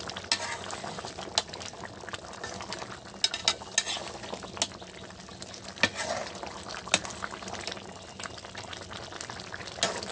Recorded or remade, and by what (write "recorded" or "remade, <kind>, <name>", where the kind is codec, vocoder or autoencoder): recorded